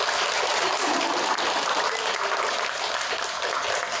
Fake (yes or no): no